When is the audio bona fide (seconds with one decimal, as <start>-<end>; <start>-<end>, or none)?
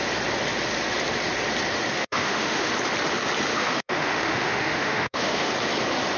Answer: 0.0-2.0; 2.7-3.5; 5.5-6.2